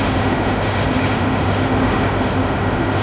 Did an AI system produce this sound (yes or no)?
yes